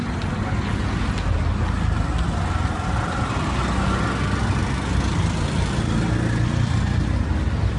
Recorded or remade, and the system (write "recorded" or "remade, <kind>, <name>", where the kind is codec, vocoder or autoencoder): recorded